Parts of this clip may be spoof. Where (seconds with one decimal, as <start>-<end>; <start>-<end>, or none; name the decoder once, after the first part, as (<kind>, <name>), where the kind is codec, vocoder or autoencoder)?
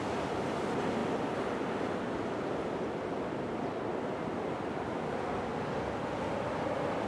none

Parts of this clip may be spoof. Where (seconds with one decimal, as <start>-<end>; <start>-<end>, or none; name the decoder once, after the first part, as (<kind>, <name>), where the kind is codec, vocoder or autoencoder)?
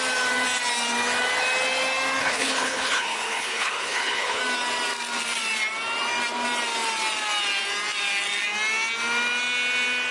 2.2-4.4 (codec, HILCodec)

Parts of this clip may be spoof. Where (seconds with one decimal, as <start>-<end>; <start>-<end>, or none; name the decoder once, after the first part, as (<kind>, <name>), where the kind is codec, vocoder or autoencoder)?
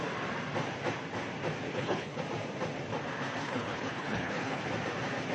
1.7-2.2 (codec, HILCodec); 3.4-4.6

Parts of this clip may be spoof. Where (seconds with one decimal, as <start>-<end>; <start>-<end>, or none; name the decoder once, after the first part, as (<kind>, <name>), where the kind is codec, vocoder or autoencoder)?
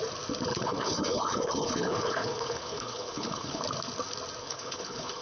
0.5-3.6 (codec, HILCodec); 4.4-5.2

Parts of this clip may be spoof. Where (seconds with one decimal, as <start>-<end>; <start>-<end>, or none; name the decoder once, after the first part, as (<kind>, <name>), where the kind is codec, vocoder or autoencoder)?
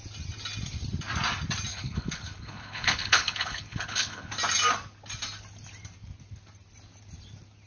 1.7-4.3 (codec, HILCodec)